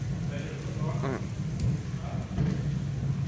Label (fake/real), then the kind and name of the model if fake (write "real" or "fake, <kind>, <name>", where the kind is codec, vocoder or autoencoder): real